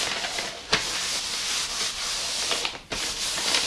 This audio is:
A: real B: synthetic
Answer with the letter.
A